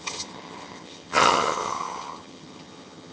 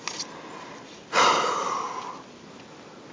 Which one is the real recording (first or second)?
second